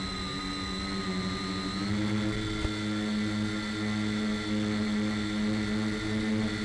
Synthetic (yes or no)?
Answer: no